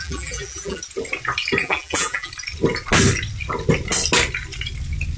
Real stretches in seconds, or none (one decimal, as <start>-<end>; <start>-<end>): 0.8-1.6; 2.3-5.2